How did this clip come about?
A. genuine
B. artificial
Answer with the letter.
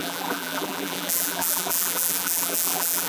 B